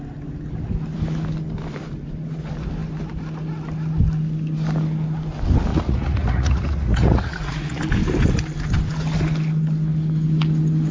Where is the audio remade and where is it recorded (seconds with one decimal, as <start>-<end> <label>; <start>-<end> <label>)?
0.0-5.7 recorded; 5.7-7.8 remade; 7.8-10.9 recorded